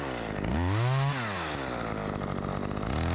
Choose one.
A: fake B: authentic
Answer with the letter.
B